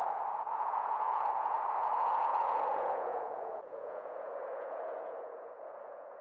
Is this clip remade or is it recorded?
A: remade